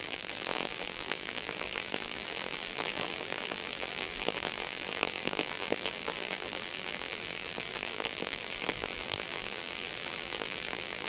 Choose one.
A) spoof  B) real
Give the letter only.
A